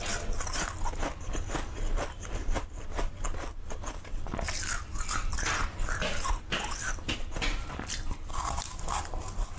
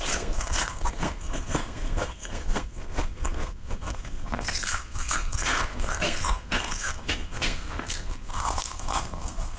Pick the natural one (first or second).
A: first